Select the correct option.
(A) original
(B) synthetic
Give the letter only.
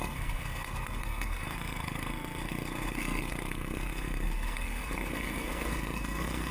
B